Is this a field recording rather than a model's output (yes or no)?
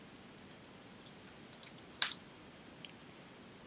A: yes